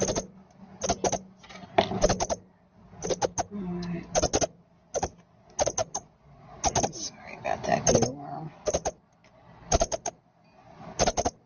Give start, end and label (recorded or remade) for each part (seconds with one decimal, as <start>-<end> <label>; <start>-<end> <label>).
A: 0.0-5.8 recorded; 5.8-6.4 remade; 6.4-11.5 recorded